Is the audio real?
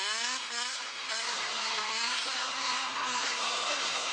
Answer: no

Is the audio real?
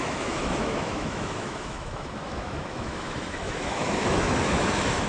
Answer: no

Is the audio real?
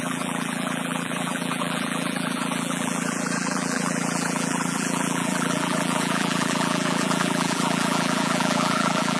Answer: no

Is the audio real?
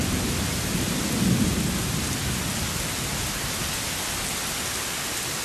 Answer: yes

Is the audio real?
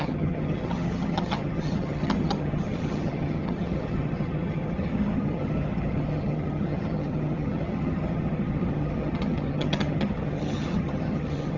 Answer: no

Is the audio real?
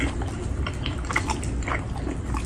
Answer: yes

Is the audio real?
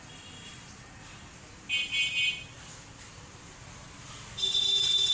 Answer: yes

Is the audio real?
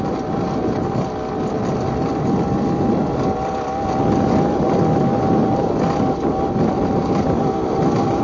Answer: yes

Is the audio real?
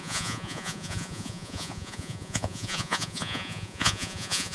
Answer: no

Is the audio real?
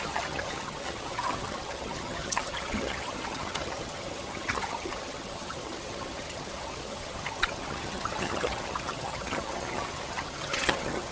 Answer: no